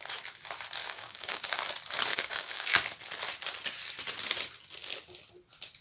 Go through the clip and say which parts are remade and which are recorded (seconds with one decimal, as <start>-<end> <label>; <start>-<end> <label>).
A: 0.0-0.8 recorded; 0.8-1.6 remade; 1.6-2.1 recorded; 2.1-2.7 remade; 2.7-5.8 recorded